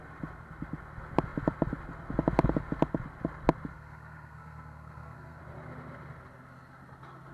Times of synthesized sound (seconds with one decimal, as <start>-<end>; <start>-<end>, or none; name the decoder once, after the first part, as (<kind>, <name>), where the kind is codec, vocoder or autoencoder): 3.7-5.4 (codec, SNAC)